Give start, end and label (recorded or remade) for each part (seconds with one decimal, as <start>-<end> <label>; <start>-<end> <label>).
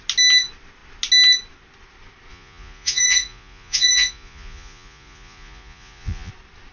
0.0-2.3 recorded; 2.3-6.3 remade; 6.3-6.7 recorded